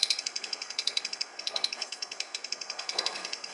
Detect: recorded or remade remade